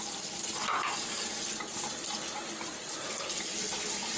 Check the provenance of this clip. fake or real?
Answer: real